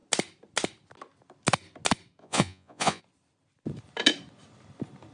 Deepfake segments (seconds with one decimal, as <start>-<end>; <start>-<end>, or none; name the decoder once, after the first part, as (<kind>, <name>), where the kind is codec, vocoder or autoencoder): 2.2-3.0 (vocoder, Vocos)